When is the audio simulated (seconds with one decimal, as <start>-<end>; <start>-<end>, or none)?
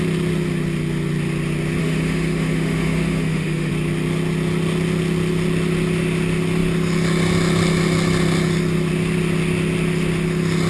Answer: 1.8-3.7